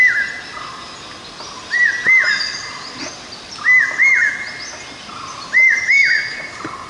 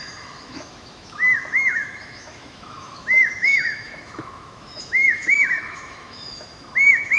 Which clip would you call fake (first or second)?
second